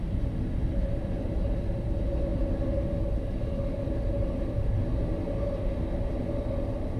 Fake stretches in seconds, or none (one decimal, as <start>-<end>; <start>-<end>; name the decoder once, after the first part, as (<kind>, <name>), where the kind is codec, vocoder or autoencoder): none